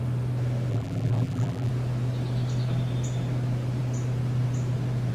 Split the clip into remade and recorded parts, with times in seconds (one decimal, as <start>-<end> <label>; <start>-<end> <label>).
0.0-0.7 recorded; 0.7-1.7 remade; 1.7-5.1 recorded